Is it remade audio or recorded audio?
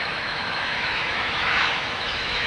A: remade